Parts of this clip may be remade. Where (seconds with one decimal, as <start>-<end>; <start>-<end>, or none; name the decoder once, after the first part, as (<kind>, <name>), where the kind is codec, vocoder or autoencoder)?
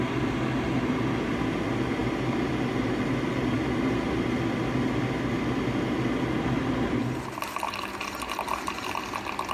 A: none